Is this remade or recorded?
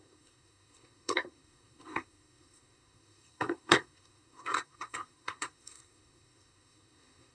remade